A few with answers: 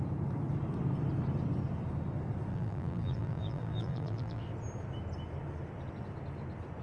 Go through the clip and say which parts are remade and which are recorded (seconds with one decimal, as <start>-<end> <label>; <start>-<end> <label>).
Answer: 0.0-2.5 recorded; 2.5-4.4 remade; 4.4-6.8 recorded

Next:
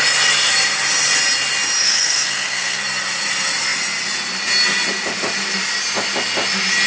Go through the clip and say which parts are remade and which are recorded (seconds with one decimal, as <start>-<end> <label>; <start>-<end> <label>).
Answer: 0.0-1.8 recorded; 1.8-2.8 remade; 2.8-6.9 recorded

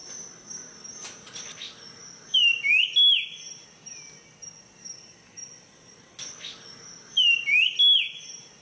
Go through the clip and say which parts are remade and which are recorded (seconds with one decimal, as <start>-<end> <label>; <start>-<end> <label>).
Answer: 0.0-8.6 recorded

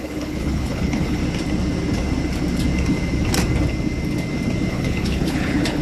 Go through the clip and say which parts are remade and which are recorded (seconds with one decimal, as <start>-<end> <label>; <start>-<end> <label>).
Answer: 0.0-1.2 remade; 1.2-4.7 recorded; 4.7-5.8 remade

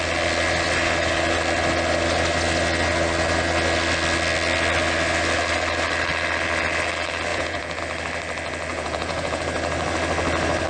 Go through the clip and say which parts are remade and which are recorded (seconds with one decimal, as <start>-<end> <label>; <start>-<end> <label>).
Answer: 0.0-7.3 recorded; 7.3-7.8 remade; 7.8-8.7 recorded; 8.7-9.4 remade; 9.4-10.7 recorded

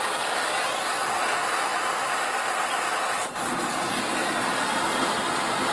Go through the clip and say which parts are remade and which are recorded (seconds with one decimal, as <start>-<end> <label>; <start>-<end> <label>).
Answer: 0.0-5.7 recorded